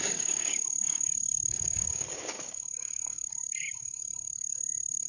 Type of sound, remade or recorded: remade